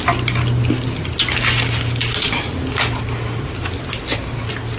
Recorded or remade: recorded